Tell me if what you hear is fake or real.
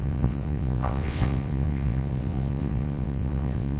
fake